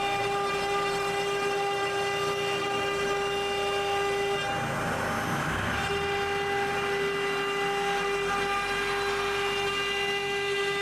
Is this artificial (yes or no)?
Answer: no